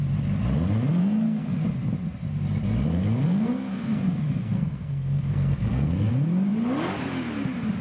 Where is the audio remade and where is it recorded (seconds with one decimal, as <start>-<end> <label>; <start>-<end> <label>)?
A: 0.0-1.0 recorded; 1.0-1.6 remade; 1.6-2.9 recorded; 2.9-6.1 remade; 6.1-7.8 recorded